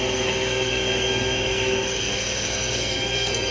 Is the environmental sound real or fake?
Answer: fake